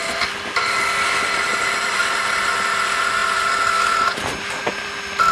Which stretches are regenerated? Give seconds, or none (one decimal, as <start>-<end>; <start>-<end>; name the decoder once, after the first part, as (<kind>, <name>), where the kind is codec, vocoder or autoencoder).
0.0-2.0 (vocoder, BigVGAN v2); 2.6-5.3